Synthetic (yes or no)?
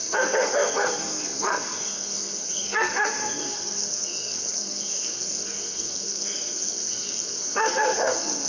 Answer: yes